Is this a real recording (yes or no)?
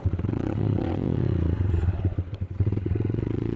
no